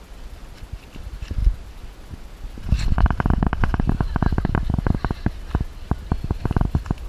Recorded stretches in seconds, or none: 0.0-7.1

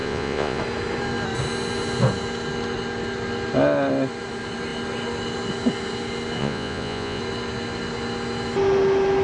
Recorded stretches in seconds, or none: 0.6-6.4; 7.2-9.2

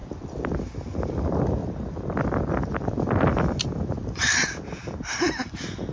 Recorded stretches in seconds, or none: 1.6-2.5

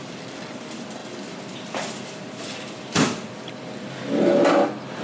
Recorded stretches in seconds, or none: none

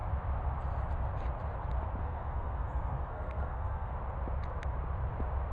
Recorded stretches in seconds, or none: 0.0-2.0; 3.9-5.5